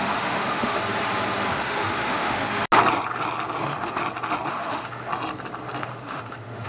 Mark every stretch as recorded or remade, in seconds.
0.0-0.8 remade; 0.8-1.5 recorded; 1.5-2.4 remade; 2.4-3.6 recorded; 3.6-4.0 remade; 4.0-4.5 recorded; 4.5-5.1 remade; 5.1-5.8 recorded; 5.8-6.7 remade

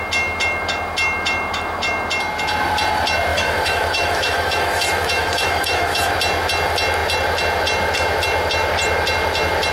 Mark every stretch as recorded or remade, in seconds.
0.0-3.3 recorded; 3.3-6.1 remade; 6.1-9.7 recorded

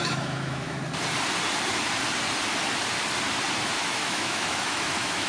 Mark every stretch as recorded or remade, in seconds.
0.0-0.8 remade; 0.8-3.8 recorded; 3.8-5.3 remade

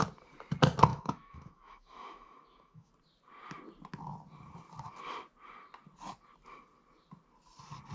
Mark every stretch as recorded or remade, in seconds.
0.0-0.9 recorded; 0.9-2.9 remade; 2.9-7.9 recorded

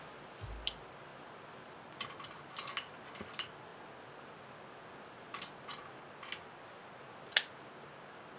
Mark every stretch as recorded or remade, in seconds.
0.0-8.4 recorded

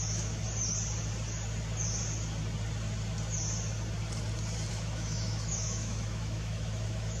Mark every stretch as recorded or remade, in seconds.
0.0-0.4 remade; 0.4-4.7 recorded; 4.7-7.2 remade

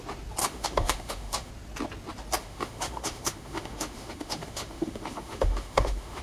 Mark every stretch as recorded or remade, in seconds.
0.0-0.4 recorded; 0.4-1.5 remade; 1.5-2.4 recorded; 2.4-6.2 remade

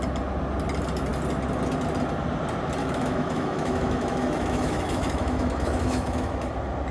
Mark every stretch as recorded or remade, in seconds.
0.0-2.8 recorded; 2.8-6.5 remade; 6.5-6.9 recorded